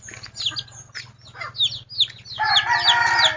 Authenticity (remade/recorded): recorded